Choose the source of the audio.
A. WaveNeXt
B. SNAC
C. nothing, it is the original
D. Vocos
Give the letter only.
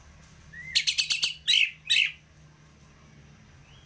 C